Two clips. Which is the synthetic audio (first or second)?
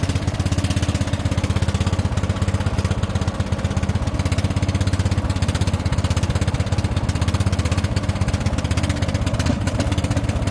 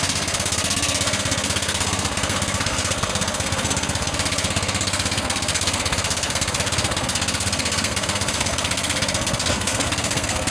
second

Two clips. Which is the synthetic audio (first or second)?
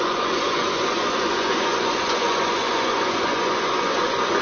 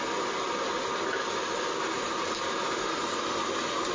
first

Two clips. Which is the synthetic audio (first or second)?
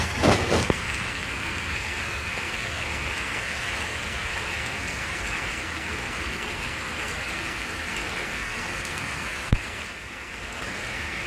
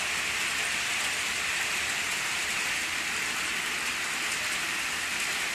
first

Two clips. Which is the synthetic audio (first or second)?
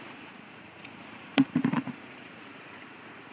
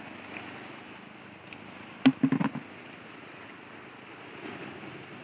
first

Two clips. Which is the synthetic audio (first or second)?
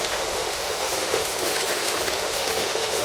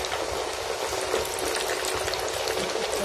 first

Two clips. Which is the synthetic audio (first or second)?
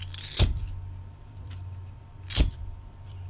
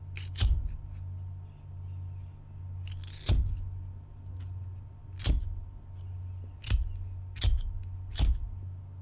first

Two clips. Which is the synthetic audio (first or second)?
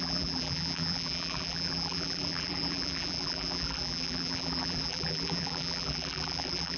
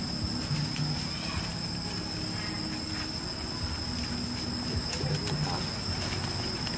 first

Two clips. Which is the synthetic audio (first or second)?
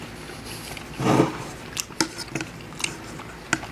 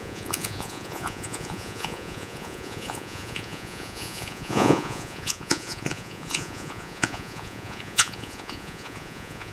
second